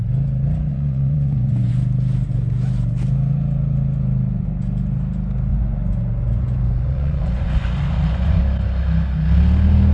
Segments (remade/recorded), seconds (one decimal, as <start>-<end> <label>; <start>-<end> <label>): 0.0-0.7 recorded; 0.7-1.7 remade; 1.7-5.5 recorded; 5.5-8.4 remade; 8.4-9.9 recorded